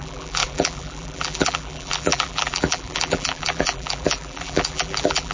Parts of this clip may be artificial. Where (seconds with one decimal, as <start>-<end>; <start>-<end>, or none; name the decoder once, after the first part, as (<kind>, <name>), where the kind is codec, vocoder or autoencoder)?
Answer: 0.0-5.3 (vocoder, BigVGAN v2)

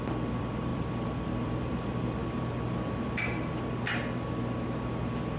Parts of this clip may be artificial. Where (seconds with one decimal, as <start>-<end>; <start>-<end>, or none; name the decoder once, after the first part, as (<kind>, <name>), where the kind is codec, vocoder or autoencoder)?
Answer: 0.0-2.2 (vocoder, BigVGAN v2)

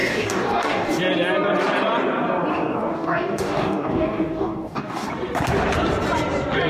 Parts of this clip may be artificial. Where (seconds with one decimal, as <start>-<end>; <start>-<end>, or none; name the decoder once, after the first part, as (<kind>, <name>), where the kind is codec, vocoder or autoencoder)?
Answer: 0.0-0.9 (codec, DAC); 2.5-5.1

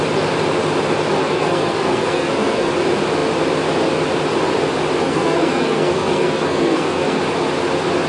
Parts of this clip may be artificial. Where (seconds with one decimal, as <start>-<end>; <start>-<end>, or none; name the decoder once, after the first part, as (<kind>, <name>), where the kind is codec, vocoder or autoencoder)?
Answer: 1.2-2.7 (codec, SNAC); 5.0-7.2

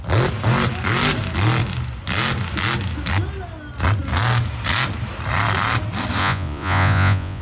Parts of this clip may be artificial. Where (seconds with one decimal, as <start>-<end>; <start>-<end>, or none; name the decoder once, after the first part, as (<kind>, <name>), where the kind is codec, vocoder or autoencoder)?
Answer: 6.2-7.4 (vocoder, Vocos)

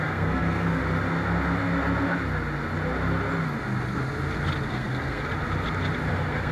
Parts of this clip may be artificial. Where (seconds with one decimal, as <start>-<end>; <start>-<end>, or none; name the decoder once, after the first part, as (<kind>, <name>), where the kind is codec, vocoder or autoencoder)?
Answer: 0.0-0.8 (codec, SNAC); 4.7-5.3; 6.1-6.5

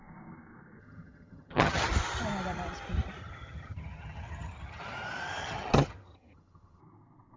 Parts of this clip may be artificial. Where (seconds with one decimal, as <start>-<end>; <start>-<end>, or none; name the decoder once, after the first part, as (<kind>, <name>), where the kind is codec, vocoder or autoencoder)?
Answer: 0.8-1.9 (vocoder, HiFi-GAN); 3.2-4.8; 5.4-6.8

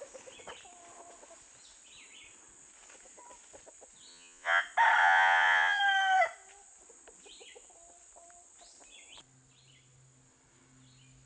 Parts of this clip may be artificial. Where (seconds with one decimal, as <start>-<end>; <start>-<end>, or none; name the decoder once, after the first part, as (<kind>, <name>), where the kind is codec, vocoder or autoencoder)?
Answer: 4.1-4.6 (vocoder, Vocos); 5.0-5.8